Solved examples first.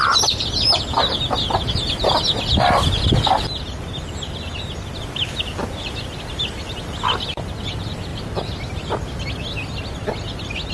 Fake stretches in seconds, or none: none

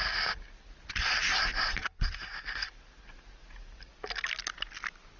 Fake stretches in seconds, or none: 0.9-3.9 (vocoder, BigVGAN v2)

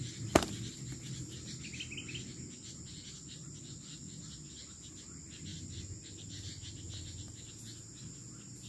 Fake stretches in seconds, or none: none